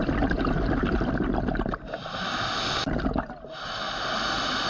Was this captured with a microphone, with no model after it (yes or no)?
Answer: yes